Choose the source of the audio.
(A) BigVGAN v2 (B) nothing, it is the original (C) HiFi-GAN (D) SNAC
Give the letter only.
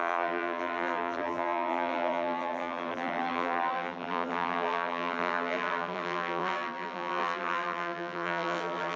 A